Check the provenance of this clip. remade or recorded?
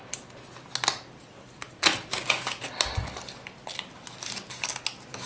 recorded